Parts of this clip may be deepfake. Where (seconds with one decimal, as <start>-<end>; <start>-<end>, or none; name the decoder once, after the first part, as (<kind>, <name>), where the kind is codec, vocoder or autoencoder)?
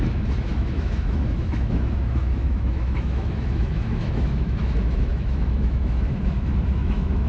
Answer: 0.0-7.3 (autoencoder, DAC-VAE)